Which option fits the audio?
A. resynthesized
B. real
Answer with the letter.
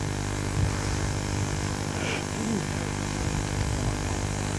B